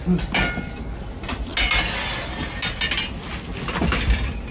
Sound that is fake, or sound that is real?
real